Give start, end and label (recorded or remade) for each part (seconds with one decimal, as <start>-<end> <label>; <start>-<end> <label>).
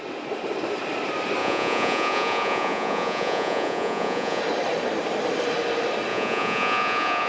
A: 0.0-1.4 recorded; 1.4-4.4 remade; 4.4-6.1 recorded; 6.1-7.3 remade